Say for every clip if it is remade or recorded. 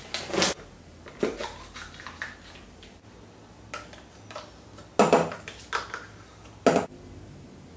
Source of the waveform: recorded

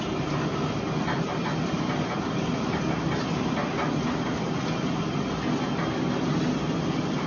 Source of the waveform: recorded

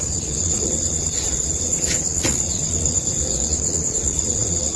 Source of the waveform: remade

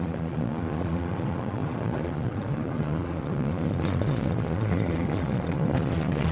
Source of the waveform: remade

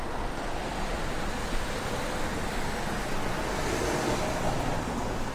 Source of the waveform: recorded